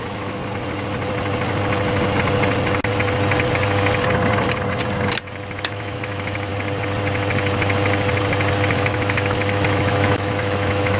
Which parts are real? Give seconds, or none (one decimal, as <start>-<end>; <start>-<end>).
0.4-5.6; 6.5-8.7